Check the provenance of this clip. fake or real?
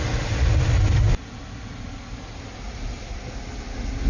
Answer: real